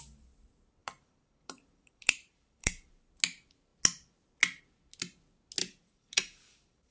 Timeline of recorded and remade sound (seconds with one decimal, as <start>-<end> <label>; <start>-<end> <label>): 0.0-0.8 recorded; 0.8-2.9 remade; 2.9-5.6 recorded; 5.6-6.9 remade